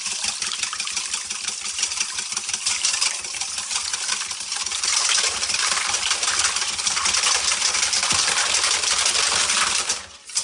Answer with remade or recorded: recorded